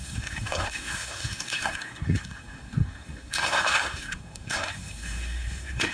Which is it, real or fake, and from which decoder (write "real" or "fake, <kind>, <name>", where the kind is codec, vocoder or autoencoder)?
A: fake, codec, SNAC